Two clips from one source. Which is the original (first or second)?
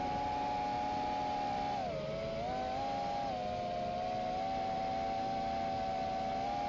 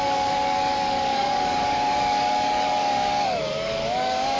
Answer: first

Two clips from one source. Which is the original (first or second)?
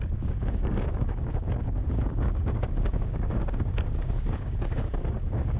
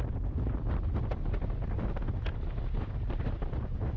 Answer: second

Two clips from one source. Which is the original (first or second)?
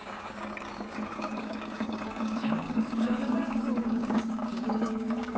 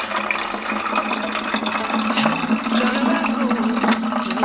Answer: second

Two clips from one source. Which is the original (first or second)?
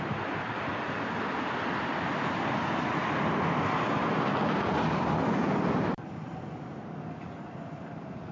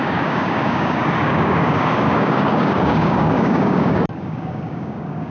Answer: first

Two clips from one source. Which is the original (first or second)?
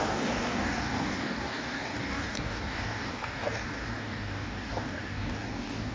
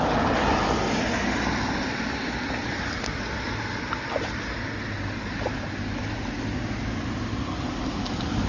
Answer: second